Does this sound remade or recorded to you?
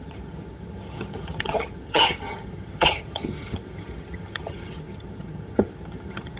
remade